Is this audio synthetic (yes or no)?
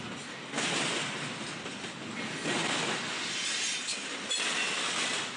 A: no